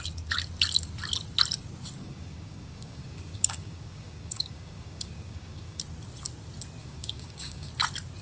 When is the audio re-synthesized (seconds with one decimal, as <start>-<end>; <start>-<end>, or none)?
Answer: 2.0-5.8; 6.8-7.7